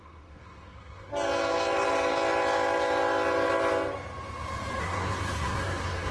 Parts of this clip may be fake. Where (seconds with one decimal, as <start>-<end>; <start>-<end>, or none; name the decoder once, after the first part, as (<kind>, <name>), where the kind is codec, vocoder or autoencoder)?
0.0-1.1 (codec, SNAC); 4.8-6.1